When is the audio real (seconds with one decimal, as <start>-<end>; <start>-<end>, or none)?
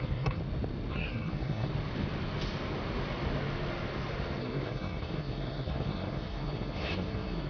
0.4-0.9; 1.7-4.4